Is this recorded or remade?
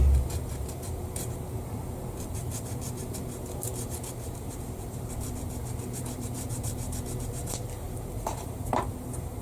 remade